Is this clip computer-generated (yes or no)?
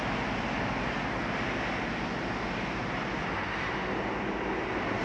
no